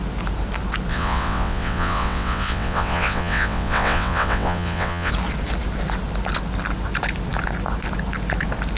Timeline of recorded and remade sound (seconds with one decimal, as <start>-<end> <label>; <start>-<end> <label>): 0.0-0.9 recorded; 0.9-5.1 remade; 5.1-8.8 recorded